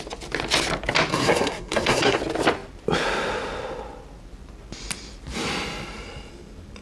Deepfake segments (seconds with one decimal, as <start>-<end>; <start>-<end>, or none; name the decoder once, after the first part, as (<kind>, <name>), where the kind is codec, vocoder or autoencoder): 1.1-2.2 (codec, SNAC)